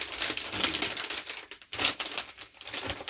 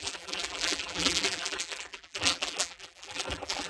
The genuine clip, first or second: first